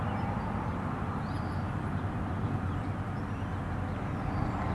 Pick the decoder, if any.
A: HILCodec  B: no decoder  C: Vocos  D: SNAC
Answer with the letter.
B